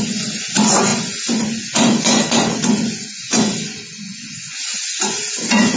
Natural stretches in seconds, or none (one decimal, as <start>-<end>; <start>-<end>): none